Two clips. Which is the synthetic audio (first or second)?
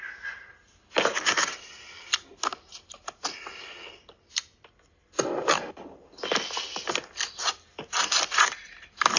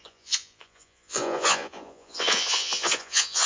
second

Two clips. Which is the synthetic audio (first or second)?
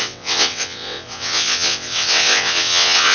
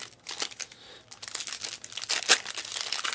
first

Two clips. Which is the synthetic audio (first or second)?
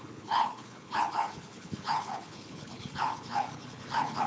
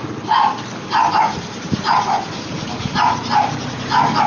first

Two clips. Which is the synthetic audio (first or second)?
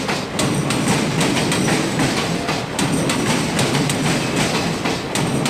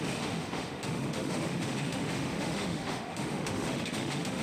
second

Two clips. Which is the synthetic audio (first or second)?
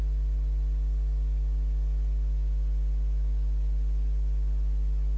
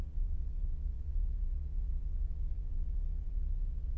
second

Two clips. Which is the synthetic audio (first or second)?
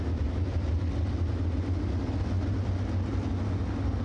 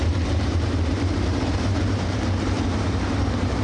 second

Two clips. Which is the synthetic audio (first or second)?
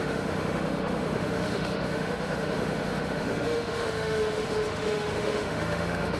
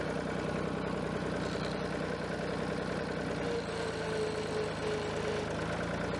first